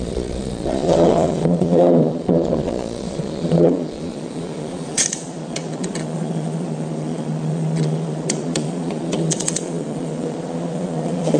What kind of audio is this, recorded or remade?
remade